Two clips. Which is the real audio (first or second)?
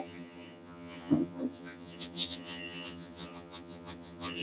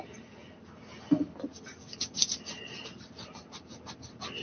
second